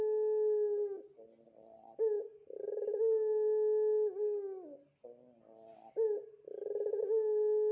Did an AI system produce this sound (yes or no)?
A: no